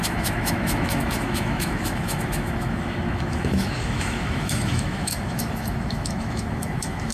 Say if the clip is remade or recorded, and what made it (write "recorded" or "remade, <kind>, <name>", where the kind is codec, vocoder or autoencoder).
remade, autoencoder, DAC-VAE